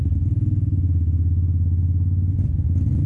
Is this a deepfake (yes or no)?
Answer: no